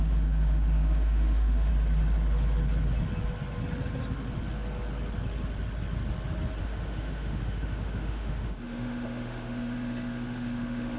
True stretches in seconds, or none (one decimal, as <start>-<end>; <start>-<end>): 1.7-6.6